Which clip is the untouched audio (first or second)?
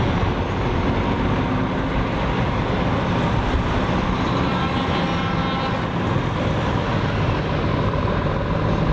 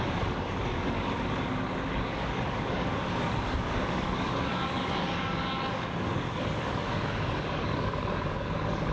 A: first